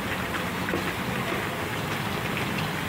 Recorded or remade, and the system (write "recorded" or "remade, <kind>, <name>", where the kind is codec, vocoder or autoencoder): recorded